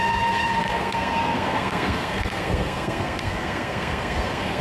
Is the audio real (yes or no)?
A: no